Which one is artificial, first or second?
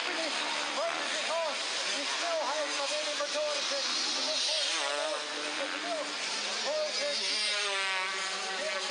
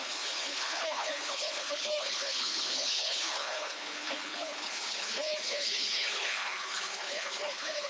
second